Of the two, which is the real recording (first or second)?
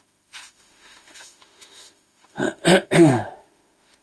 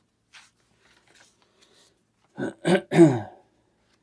second